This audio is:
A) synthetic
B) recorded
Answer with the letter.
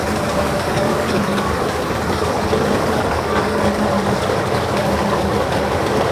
A